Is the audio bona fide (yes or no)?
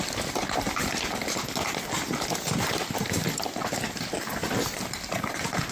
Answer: yes